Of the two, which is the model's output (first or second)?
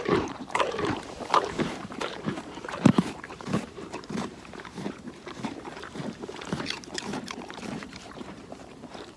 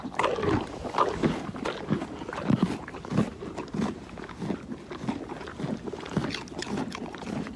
first